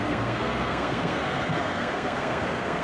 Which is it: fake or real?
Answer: fake